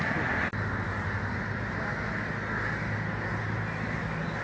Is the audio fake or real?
real